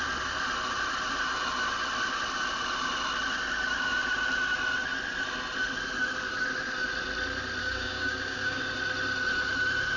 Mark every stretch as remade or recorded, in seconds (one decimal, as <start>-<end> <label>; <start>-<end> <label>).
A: 0.0-7.6 recorded; 7.6-8.6 remade; 8.6-10.0 recorded